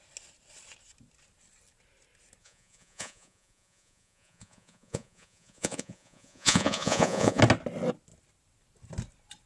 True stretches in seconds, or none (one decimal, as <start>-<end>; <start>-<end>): 0.0-2.4; 7.4-9.5